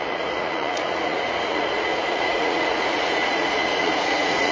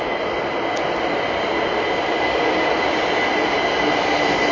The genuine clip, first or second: second